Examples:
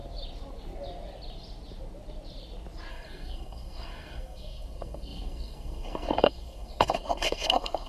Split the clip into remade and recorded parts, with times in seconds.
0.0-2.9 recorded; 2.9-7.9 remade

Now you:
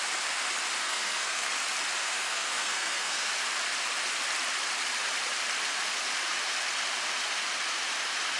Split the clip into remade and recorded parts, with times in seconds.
0.0-0.8 recorded; 0.8-1.5 remade; 1.5-2.0 recorded; 2.0-3.3 remade; 3.3-8.4 recorded

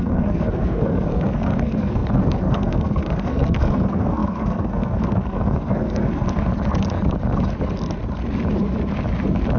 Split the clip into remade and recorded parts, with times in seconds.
0.0-6.5 remade; 6.5-9.6 recorded

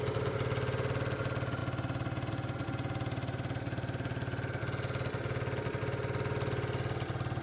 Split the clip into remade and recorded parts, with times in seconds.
0.0-7.4 recorded

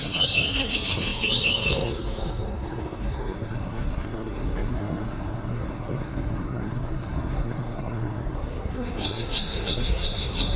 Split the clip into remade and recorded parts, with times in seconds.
0.0-10.6 remade

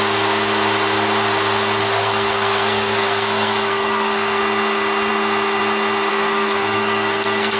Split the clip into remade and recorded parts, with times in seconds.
0.0-1.8 recorded; 1.8-4.4 remade; 4.4-6.1 recorded; 6.1-7.6 remade

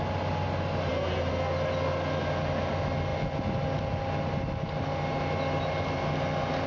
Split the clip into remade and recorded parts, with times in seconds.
0.0-6.7 recorded

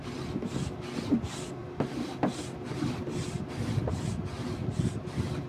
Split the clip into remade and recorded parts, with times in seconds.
0.0-5.5 recorded